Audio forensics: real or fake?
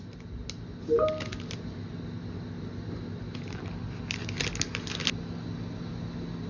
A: real